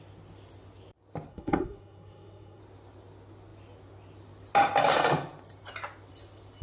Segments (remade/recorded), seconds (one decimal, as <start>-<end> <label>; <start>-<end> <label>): 0.0-1.3 recorded; 1.3-2.6 remade; 2.6-6.6 recorded